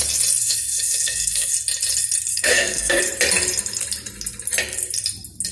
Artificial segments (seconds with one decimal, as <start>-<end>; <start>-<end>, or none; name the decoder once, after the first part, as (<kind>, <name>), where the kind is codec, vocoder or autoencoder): 0.4-1.5 (codec, SNAC); 2.3-3.0